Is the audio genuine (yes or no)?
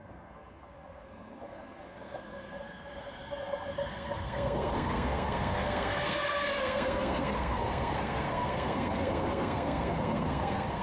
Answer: no